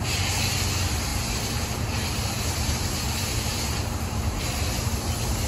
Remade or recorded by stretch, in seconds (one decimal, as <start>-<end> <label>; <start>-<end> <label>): 0.0-1.1 recorded; 1.1-4.4 remade; 4.4-5.5 recorded